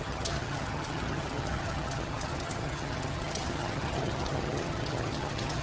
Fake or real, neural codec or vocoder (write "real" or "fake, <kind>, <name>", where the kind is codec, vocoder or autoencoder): fake, vocoder, HiFi-GAN